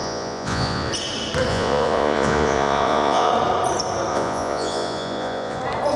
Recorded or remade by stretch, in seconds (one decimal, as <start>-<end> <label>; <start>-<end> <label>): 0.0-0.9 remade; 0.9-1.5 recorded; 1.5-3.3 remade; 3.3-4.1 recorded; 4.1-5.6 remade; 5.6-6.0 recorded